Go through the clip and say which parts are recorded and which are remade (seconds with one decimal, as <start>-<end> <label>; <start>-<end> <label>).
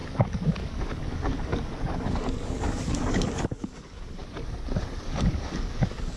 0.0-4.2 remade; 4.2-4.8 recorded; 4.8-6.2 remade